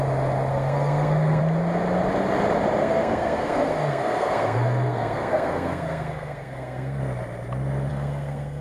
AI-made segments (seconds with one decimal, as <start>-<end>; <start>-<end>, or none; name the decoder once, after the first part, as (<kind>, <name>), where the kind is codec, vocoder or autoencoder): 0.5-1.4 (codec, SNAC); 2.8-7.0; 7.9-8.6